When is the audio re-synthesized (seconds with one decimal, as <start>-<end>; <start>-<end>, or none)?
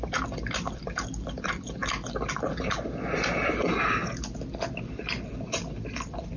0.0-1.8; 2.3-4.0; 4.8-6.4